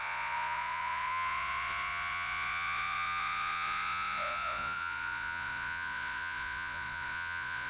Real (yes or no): no